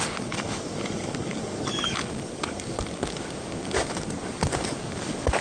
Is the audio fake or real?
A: fake